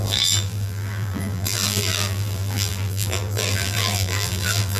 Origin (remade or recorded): remade